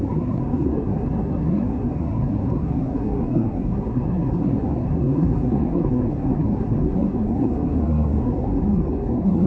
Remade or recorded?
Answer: remade